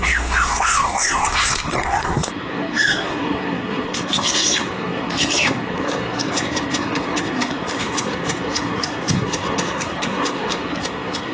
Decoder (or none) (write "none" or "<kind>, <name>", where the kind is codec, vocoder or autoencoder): codec, SNAC